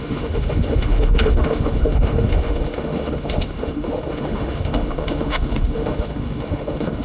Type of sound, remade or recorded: remade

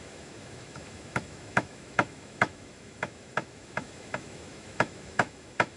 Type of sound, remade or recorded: remade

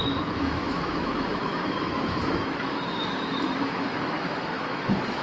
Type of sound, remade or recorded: remade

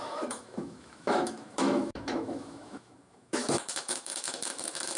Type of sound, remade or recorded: remade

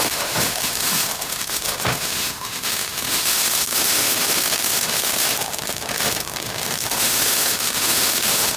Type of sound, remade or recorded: remade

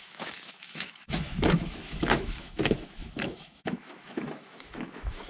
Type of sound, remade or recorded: remade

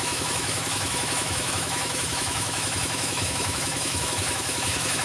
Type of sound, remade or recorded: remade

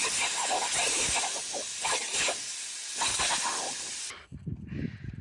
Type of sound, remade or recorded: recorded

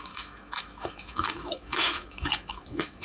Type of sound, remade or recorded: remade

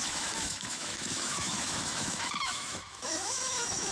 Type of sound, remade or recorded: remade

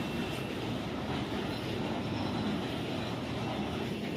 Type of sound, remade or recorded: recorded